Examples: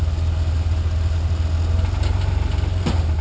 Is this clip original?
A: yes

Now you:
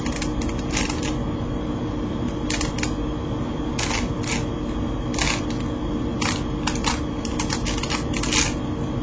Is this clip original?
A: yes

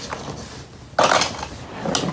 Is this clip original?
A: yes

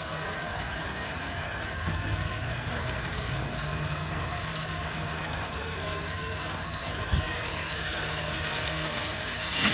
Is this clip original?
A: no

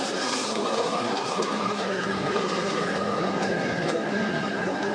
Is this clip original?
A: no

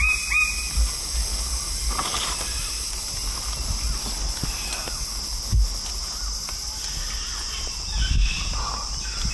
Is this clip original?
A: yes